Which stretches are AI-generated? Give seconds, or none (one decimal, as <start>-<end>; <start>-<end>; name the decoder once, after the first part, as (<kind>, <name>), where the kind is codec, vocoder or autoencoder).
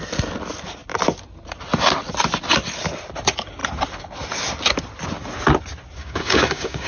6.0-6.9 (codec, DAC)